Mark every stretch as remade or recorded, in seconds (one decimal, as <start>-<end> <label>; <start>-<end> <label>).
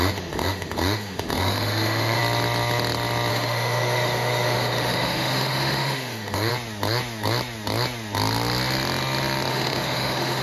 0.0-2.2 remade; 2.2-3.3 recorded; 3.3-6.5 remade; 6.5-9.5 recorded; 9.5-10.4 remade